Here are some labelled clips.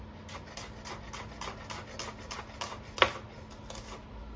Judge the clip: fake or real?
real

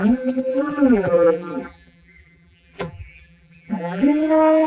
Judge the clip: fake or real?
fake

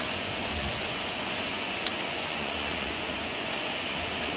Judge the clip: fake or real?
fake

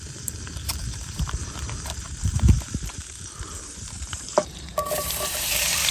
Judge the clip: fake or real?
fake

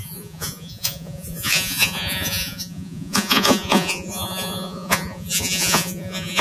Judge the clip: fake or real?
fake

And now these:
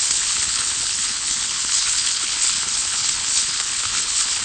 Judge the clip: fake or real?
fake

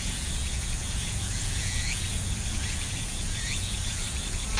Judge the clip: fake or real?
fake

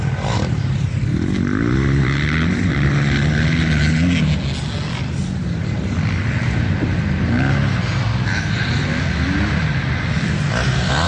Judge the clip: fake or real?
real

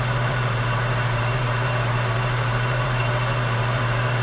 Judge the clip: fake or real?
fake